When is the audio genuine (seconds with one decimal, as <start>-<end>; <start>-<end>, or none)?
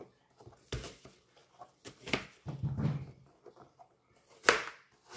0.0-5.2